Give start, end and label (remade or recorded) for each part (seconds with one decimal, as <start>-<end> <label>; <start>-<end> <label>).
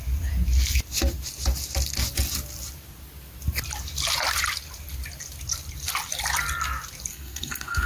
0.0-7.1 recorded; 7.1-7.9 remade